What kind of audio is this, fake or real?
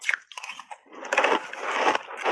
real